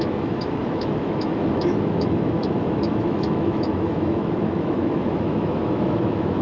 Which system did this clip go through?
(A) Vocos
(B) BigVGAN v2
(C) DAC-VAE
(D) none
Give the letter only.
C